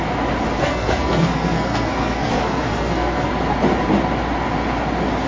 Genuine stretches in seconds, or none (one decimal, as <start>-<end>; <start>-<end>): 0.0-0.6; 3.3-5.3